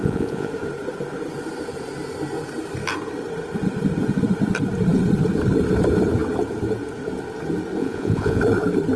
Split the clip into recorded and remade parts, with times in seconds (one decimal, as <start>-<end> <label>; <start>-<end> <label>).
0.0-0.5 remade; 0.5-7.8 recorded; 7.8-8.4 remade; 8.4-9.0 recorded